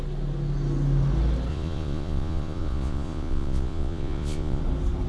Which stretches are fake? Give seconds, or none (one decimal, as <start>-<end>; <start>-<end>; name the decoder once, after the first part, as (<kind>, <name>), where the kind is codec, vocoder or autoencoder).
1.5-4.6 (vocoder, Vocos)